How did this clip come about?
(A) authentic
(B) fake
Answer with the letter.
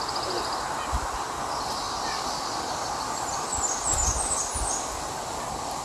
A